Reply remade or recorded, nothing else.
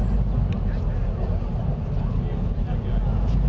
recorded